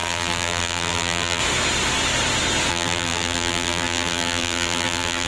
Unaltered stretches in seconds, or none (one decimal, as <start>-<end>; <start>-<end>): 1.4-2.7